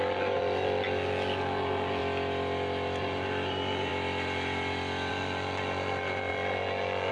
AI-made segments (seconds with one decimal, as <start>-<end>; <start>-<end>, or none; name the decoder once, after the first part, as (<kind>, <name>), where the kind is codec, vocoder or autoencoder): 0.0-2.0 (vocoder, Vocos); 3.0-3.9; 5.1-7.1